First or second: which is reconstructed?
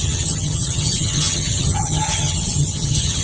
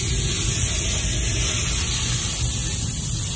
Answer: first